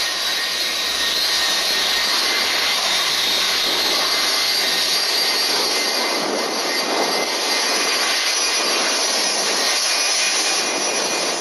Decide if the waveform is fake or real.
real